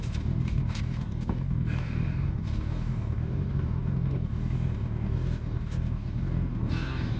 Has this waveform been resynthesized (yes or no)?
yes